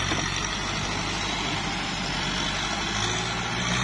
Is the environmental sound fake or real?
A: real